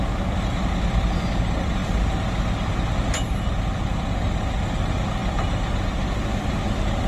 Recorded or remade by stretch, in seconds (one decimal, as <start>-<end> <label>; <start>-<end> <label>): 0.0-7.1 recorded